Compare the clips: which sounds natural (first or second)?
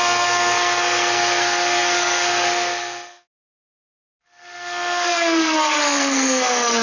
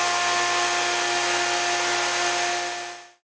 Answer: second